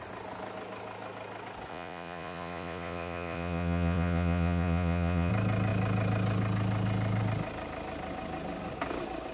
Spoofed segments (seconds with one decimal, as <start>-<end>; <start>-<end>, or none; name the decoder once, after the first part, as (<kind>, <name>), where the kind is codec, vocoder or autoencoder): 1.7-5.3 (vocoder, Vocos)